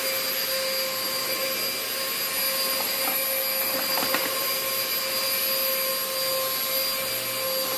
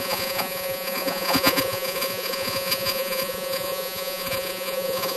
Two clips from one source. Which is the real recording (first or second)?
first